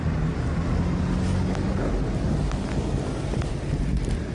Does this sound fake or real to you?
real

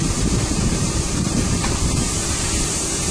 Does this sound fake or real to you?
fake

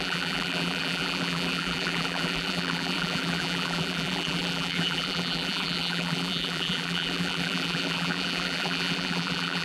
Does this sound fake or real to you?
fake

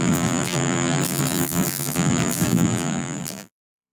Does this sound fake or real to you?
fake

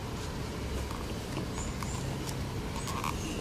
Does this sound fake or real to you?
real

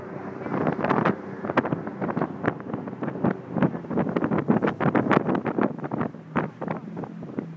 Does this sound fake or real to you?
real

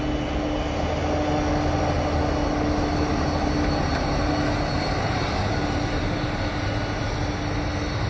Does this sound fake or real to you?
real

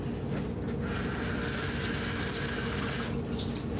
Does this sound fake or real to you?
real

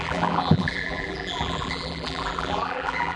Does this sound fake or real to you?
fake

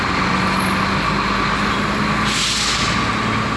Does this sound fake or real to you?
real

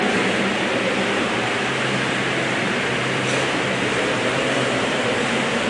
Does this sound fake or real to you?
fake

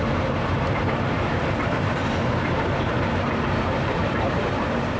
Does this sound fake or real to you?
fake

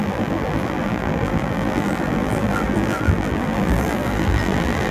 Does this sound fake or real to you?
fake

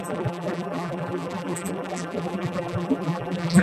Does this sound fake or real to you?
fake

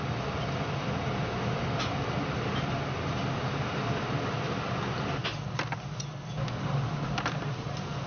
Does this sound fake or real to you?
real